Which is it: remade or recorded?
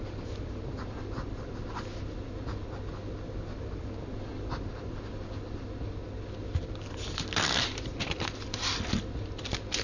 recorded